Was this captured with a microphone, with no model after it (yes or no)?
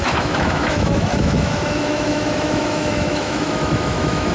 no